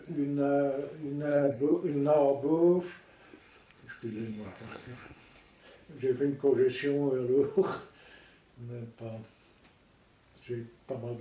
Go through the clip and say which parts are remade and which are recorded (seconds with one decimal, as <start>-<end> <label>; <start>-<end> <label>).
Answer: 0.0-1.3 recorded; 1.3-1.9 remade; 1.9-3.4 recorded; 3.4-5.6 remade; 5.6-11.2 recorded